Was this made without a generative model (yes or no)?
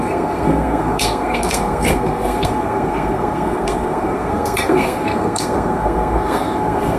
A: no